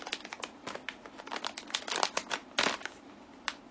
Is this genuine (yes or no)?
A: yes